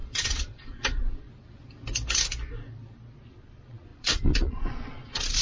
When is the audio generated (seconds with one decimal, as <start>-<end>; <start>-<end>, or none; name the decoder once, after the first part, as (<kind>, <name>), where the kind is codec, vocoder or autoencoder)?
0.0-1.3 (vocoder, Vocos); 3.3-5.4